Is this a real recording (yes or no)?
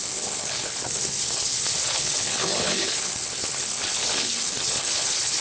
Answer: no